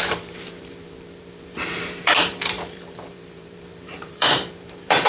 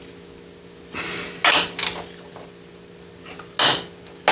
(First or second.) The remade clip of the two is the first